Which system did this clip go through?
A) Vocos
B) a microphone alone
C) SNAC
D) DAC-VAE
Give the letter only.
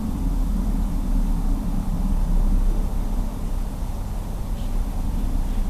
B